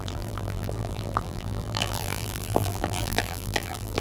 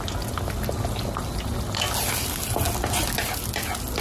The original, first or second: second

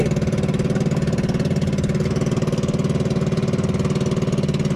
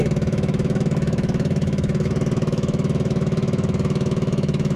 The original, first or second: first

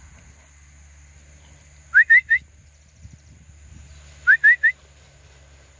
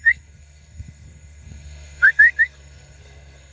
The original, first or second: first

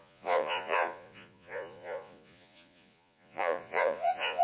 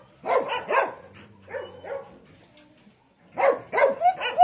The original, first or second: second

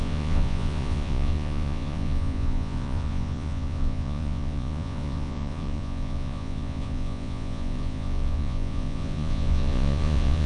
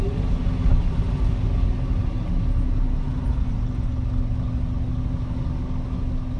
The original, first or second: second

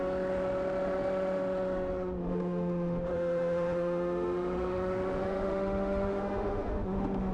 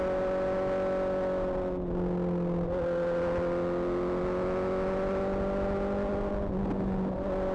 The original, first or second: second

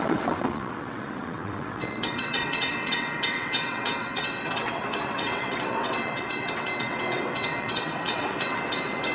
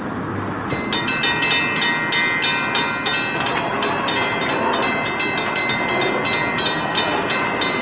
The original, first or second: second